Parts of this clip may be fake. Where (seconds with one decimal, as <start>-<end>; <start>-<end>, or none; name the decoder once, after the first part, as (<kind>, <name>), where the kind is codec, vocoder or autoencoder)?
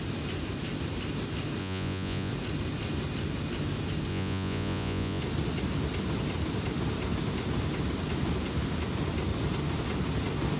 1.6-2.3 (vocoder, Vocos); 4.1-5.2